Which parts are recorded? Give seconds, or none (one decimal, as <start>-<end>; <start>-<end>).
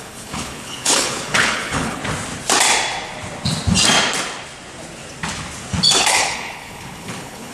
2.0-6.0